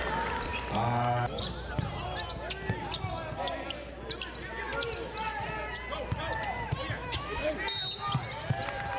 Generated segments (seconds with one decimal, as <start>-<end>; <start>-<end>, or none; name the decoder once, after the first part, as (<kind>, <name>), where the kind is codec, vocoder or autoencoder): 7.0-7.5 (autoencoder, DAC-VAE)